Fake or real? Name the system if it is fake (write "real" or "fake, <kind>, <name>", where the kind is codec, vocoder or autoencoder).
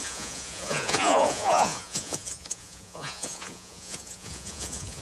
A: fake, vocoder, Vocos